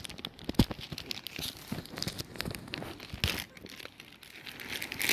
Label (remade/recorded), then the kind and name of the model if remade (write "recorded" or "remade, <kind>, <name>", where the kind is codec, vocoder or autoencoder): recorded